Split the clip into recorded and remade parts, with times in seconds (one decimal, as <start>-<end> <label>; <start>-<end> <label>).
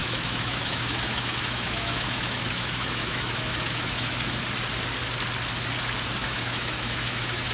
0.0-4.4 remade; 4.4-6.2 recorded; 6.2-7.5 remade